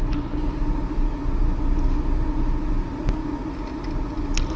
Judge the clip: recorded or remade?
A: recorded